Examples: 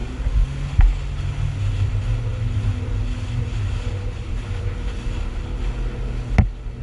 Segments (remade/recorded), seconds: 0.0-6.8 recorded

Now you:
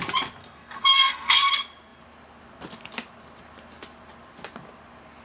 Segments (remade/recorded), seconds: 0.0-0.4 recorded; 0.4-1.5 remade; 1.5-5.2 recorded

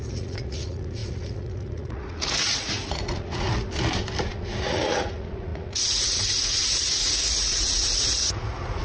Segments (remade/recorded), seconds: 0.0-3.5 remade; 3.5-4.3 recorded; 4.3-8.8 remade

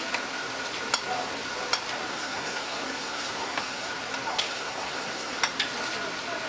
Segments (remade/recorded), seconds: 0.0-2.1 recorded; 2.1-3.9 remade; 3.9-4.3 recorded; 4.3-5.4 remade; 5.4-6.5 recorded

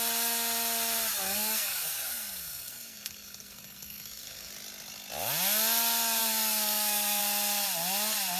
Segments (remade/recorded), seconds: 0.0-1.1 recorded; 1.1-4.5 remade; 4.5-6.2 recorded; 6.2-7.2 remade; 7.2-8.4 recorded

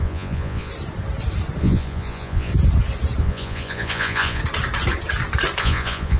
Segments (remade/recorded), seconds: 0.0-0.7 remade; 0.7-1.6 recorded; 1.6-2.5 remade; 2.5-3.2 recorded; 3.2-4.4 remade; 4.4-5.6 recorded; 5.6-6.2 remade

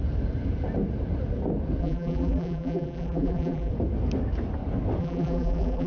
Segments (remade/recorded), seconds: 0.0-1.8 recorded; 1.8-3.7 remade; 3.7-5.0 recorded; 5.0-5.9 remade